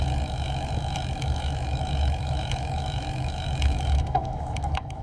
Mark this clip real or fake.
fake